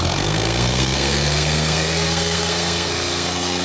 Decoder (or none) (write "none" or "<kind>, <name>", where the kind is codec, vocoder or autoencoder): codec, SNAC